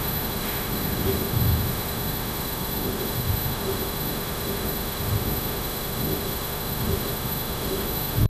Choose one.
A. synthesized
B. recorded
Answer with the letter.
A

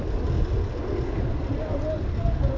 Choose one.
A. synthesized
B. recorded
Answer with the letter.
B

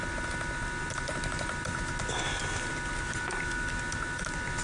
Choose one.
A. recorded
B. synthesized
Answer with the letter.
A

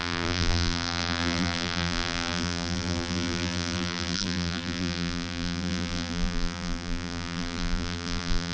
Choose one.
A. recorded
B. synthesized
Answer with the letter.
B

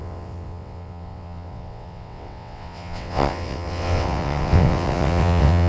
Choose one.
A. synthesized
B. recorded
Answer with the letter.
A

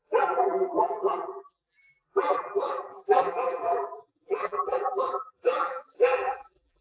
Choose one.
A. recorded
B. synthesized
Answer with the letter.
B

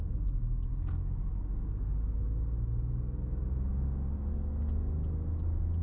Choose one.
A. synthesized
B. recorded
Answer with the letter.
B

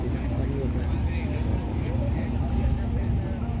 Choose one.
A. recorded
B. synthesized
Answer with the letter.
A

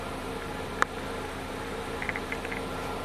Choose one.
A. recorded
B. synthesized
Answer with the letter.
A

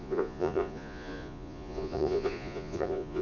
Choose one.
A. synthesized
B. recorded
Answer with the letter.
A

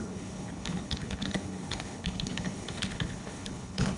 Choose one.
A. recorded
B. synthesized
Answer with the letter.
B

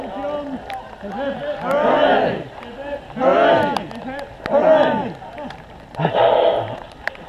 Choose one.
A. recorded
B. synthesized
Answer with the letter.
A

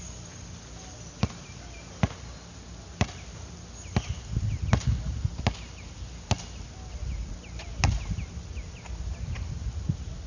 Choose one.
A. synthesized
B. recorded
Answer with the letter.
B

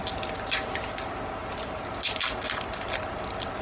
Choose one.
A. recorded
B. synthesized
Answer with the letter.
A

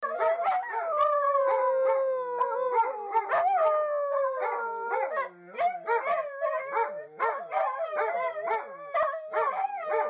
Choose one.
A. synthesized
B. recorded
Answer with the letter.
B